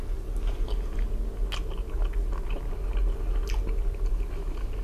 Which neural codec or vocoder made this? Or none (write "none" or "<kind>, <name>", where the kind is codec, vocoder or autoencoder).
none